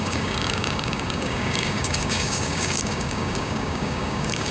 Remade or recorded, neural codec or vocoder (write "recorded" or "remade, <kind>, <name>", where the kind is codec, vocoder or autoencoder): remade, codec, DAC